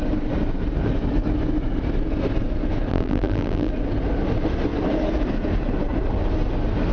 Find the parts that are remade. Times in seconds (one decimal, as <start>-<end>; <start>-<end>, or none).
2.9-3.7